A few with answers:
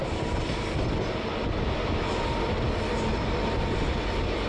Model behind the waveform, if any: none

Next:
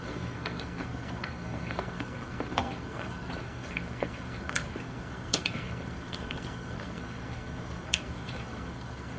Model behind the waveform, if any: codec, SNAC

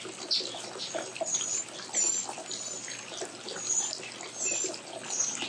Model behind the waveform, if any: none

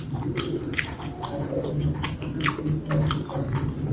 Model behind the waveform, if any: vocoder, BigVGAN v2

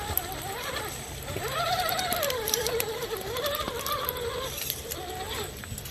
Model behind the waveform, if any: vocoder, BigVGAN v2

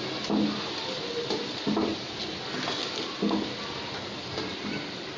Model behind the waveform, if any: none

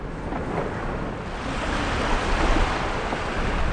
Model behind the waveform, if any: none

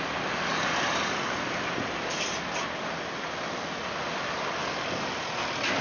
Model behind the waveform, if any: none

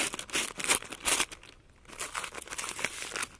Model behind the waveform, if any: none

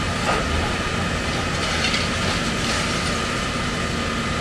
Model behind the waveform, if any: none